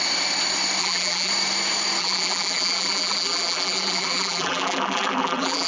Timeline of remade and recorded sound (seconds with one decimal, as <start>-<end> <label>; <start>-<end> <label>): 0.0-0.8 recorded; 0.8-1.3 remade; 1.3-2.0 recorded; 2.0-5.7 remade